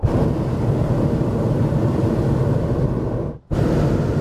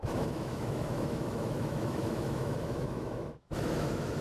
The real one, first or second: first